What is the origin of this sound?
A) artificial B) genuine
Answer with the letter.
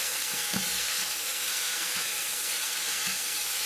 A